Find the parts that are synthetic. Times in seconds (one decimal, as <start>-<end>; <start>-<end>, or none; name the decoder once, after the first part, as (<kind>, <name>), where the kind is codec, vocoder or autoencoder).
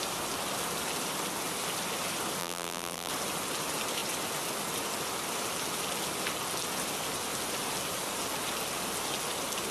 2.4-3.1 (vocoder, BigVGAN v2)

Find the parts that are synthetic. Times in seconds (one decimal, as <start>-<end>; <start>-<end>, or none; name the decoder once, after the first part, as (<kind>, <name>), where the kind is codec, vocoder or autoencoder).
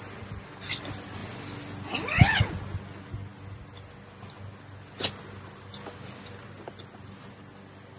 none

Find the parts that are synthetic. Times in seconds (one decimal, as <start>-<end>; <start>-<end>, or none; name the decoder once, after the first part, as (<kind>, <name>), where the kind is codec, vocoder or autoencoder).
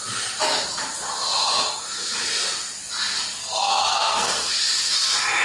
3.4-4.5 (codec, SNAC)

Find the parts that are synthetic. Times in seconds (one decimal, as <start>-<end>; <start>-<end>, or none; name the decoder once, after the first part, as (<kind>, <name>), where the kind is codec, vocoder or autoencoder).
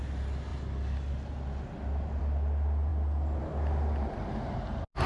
none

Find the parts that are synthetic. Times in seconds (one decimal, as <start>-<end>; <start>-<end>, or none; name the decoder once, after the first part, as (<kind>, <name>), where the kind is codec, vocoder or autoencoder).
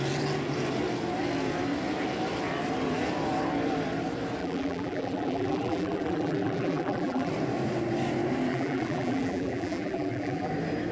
4.4-7.3 (vocoder, BigVGAN v2); 8.5-10.5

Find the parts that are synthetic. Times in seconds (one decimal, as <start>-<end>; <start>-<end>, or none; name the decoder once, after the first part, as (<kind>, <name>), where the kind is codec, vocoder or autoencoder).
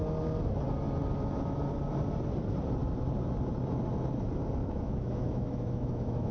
4.6-6.3 (autoencoder, DAC-VAE)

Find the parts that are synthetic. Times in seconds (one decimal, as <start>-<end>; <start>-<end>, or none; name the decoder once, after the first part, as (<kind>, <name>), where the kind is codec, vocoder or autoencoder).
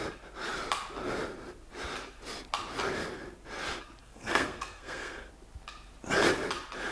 4.0-5.3 (codec, SNAC)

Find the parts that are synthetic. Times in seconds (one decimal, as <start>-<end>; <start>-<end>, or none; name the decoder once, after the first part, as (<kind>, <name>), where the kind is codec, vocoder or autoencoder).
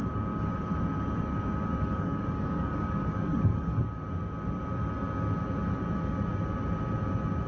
1.7-3.8 (codec, DAC)